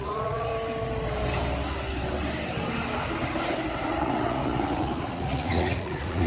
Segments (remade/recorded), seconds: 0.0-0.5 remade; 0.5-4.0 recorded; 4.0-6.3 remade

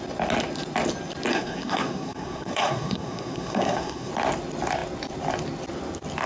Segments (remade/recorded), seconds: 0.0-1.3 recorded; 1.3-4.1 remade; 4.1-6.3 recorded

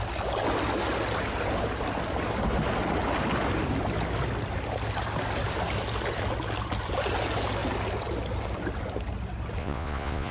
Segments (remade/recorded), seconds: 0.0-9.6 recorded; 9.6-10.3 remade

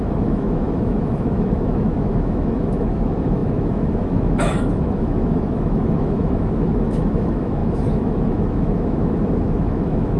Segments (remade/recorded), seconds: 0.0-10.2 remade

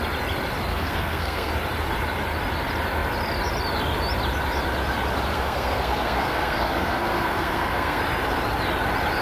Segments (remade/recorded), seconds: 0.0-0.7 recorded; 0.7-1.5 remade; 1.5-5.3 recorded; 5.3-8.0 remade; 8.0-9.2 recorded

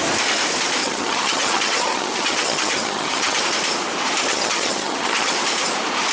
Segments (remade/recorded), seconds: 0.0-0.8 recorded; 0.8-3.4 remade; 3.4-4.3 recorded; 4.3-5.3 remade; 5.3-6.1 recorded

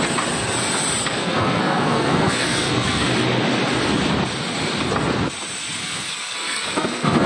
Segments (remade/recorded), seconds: 0.0-1.0 recorded; 1.0-3.1 remade; 3.1-5.8 recorded; 5.8-7.3 remade

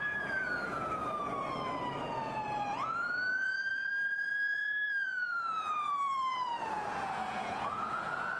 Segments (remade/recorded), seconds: 0.0-1.2 remade; 1.2-2.0 recorded; 2.0-8.4 remade